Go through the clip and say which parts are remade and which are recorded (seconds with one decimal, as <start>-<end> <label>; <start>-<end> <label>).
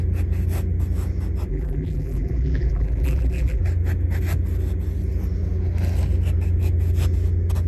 0.0-1.5 recorded; 1.5-3.6 remade; 3.6-7.7 recorded